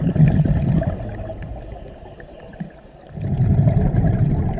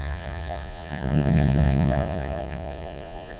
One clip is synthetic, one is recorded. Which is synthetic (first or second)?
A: second